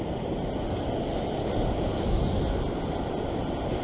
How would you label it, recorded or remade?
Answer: recorded